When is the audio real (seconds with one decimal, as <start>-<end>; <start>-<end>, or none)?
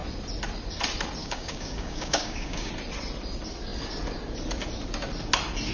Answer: 0.0-1.2; 2.7-5.7